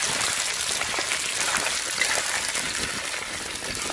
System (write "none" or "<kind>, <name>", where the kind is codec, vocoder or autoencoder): none